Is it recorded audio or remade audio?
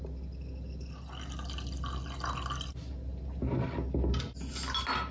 recorded